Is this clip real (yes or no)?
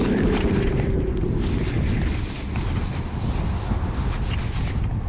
yes